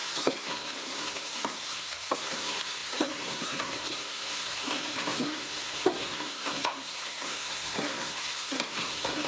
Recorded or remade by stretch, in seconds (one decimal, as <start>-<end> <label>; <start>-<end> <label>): 0.0-9.3 remade